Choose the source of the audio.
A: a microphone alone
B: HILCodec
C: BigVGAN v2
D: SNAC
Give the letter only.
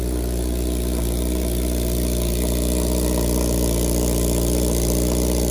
A